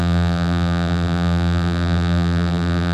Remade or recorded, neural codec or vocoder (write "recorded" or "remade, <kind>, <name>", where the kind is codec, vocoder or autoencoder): remade, vocoder, BigVGAN v2